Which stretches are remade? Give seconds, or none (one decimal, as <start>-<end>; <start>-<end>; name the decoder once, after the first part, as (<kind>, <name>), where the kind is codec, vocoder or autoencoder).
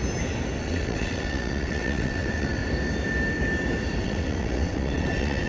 0.6-2.6 (vocoder, WaveNeXt); 4.0-5.5